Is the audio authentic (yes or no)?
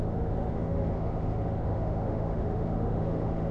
no